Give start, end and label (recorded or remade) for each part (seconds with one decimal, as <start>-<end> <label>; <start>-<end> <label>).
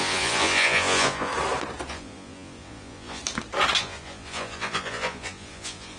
0.0-1.3 remade; 1.3-1.9 recorded; 1.9-3.2 remade; 3.2-3.8 recorded; 3.8-6.0 remade